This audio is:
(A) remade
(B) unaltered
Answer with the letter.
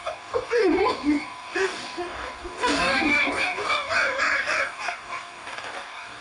A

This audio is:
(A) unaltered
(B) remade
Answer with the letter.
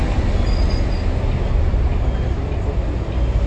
A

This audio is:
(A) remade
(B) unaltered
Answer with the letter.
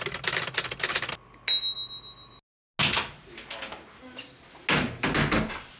B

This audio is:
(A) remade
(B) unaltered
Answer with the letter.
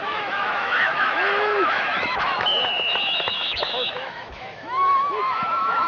A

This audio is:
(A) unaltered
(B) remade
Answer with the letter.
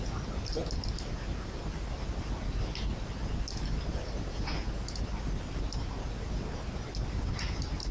A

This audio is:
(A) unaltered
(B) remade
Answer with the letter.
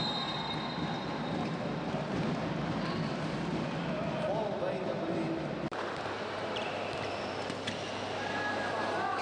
A